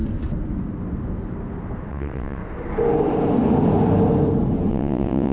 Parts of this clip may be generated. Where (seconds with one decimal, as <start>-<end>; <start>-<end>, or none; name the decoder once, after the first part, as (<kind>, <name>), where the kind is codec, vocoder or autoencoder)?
1.9-2.4 (vocoder, WaveNeXt); 4.7-5.3